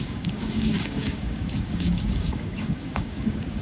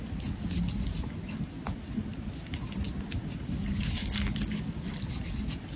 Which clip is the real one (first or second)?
second